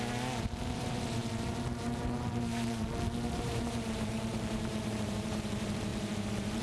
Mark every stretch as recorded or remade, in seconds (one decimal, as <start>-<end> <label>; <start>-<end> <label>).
0.0-6.6 remade